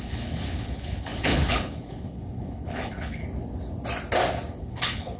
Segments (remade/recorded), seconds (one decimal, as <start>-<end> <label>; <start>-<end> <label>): 0.0-3.2 remade; 3.2-4.6 recorded; 4.6-5.2 remade